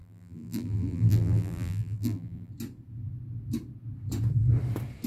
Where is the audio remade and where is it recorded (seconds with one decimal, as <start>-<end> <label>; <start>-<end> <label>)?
0.0-2.5 remade; 2.5-5.1 recorded